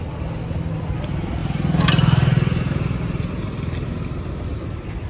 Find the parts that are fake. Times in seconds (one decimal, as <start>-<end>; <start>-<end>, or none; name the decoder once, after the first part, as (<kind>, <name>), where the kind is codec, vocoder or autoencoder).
none